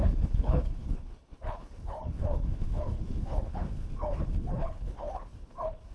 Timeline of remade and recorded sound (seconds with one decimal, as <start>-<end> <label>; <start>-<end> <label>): 0.0-5.9 remade